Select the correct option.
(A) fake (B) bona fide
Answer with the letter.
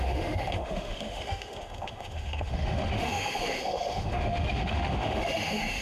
A